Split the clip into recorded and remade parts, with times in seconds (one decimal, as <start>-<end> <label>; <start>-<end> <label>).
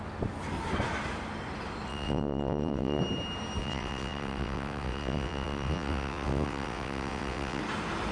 0.0-1.9 recorded; 1.9-3.0 remade; 3.0-3.6 recorded; 3.6-7.6 remade; 7.6-8.1 recorded